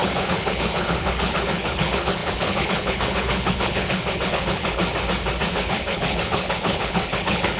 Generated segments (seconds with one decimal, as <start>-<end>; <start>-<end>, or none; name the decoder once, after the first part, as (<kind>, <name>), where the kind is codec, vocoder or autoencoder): 0.0-4.8 (codec, HILCodec); 5.5-7.6

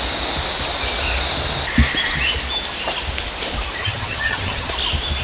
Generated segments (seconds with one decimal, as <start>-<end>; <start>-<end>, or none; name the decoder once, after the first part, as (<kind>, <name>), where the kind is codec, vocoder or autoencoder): 3.8-4.7 (vocoder, HiFi-GAN)

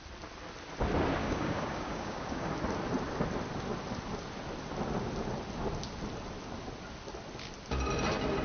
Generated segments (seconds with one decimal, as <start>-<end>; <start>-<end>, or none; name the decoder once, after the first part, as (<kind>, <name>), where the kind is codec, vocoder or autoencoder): 1.2-2.5 (codec, DAC)

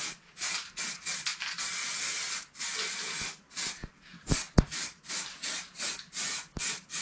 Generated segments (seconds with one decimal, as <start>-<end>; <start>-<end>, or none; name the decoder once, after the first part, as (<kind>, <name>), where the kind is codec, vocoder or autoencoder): none

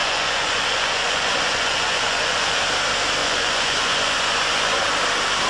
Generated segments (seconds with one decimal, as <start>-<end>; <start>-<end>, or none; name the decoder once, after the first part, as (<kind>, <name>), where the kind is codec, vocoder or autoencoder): 0.0-2.6 (vocoder, Vocos); 3.2-4.9

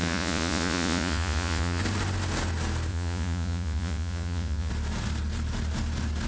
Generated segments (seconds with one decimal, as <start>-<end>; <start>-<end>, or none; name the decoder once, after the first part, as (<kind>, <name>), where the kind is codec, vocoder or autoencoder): 0.0-1.8 (vocoder, Vocos); 2.9-4.7